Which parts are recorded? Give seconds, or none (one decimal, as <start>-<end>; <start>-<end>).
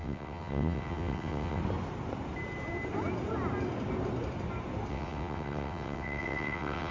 1.6-4.9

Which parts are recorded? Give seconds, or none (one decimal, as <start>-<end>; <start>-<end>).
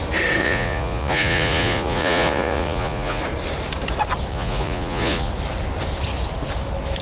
0.0-0.4; 3.2-4.3; 5.3-7.0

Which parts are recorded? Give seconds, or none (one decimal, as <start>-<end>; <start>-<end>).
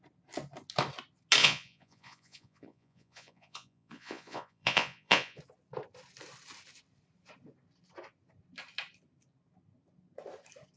0.0-1.4; 5.4-10.8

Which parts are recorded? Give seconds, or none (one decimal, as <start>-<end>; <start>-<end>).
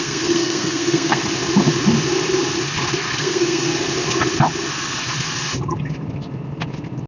1.2-3.2; 3.7-7.1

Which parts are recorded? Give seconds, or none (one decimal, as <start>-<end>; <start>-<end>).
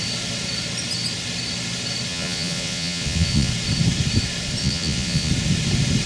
0.0-2.1; 3.5-4.6; 5.3-6.1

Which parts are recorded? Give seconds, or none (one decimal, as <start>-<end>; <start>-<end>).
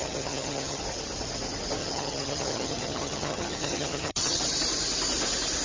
0.8-1.8; 4.4-5.6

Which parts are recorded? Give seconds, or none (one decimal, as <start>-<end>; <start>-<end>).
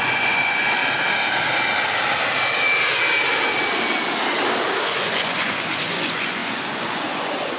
0.8-4.8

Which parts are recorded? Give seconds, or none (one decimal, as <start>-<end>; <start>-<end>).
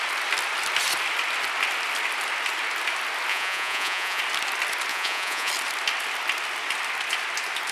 0.0-3.3; 4.2-4.9; 5.5-7.7